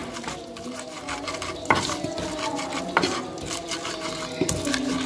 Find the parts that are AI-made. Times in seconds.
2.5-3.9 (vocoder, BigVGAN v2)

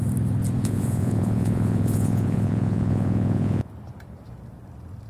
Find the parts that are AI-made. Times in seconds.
0.6-3.7 (vocoder, Vocos)

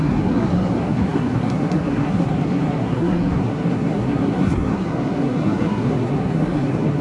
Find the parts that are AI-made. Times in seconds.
0.0-7.0 (codec, SNAC)

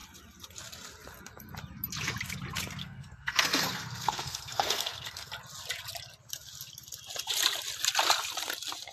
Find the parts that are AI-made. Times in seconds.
2.8-5.3 (codec, SNAC)

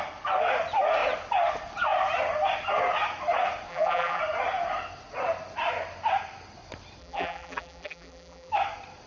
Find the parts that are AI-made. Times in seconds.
3.7-4.2 (vocoder, BigVGAN v2); 7.0-8.5

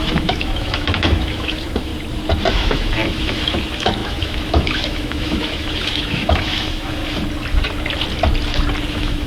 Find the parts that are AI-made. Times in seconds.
0.0-1.9 (autoencoder, DAC-VAE); 2.5-7.0; 8.9-9.3